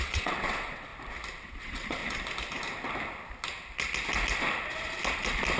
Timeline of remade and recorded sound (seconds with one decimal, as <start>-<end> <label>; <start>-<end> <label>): 0.0-0.9 remade; 0.9-1.5 recorded; 1.5-2.0 remade; 2.0-5.6 recorded